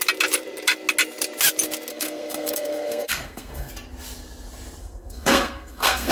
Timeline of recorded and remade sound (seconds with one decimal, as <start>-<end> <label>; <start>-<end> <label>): 0.0-1.9 recorded; 1.9-3.7 remade; 3.7-4.8 recorded; 4.8-6.1 remade